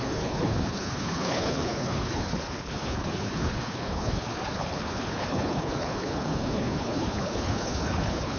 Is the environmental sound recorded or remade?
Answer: remade